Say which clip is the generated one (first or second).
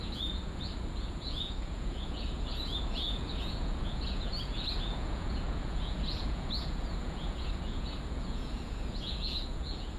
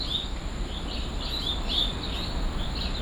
first